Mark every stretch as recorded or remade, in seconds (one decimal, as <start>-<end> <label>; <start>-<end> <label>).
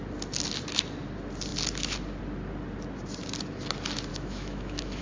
0.0-4.1 recorded; 4.1-5.0 remade